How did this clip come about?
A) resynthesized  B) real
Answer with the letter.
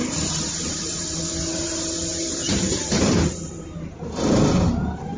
A